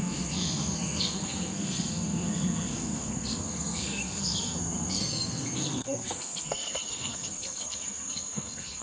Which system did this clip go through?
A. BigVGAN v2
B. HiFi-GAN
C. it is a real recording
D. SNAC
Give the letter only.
D